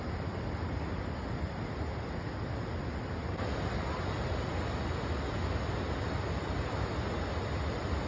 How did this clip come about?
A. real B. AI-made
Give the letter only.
A